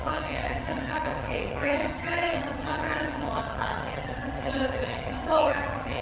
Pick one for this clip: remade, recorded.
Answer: remade